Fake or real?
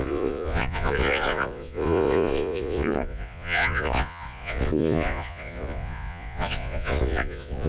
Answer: fake